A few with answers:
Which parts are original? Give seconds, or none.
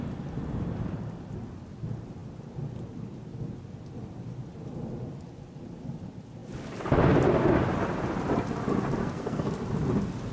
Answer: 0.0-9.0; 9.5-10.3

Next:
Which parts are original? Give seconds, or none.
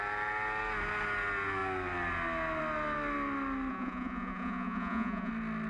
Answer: 0.0-3.7; 5.3-5.7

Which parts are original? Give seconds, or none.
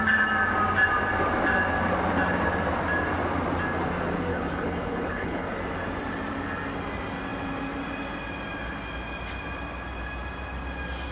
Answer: 0.0-4.3; 5.6-11.1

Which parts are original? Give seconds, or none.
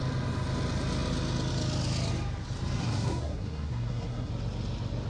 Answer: 0.0-2.8; 4.3-5.1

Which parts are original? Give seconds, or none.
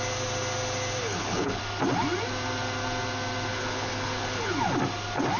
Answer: 0.0-1.0; 1.6-3.5; 4.5-5.4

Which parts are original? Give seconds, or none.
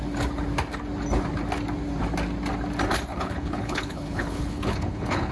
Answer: 0.0-3.1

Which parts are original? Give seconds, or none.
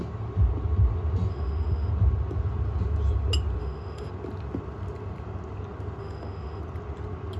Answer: 0.0-1.3; 1.9-3.6; 4.1-6.0; 6.6-7.4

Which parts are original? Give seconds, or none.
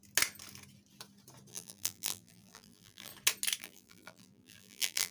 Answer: 0.0-1.5; 3.1-3.6